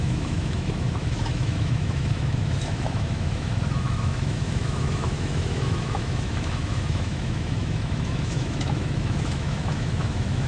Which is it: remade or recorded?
remade